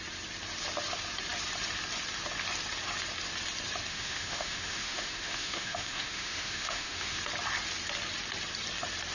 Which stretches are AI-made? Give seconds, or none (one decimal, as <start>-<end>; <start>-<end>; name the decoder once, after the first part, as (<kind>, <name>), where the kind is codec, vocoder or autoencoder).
3.9-7.2 (autoencoder, DAC-VAE)